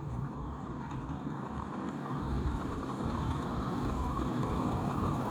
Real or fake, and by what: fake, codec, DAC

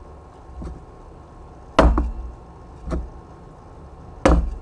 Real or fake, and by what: real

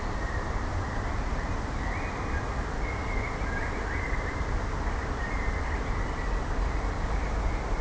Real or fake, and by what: real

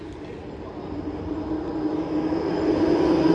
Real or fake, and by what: real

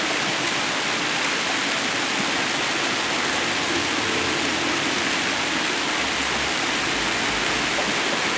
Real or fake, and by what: real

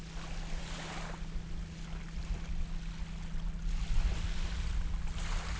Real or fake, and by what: real